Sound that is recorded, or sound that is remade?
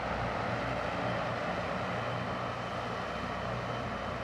recorded